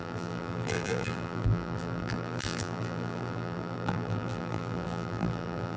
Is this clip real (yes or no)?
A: no